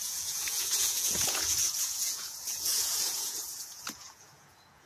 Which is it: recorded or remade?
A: remade